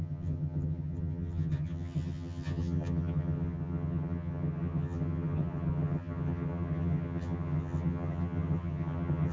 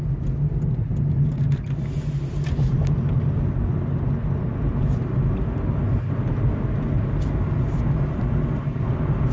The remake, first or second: first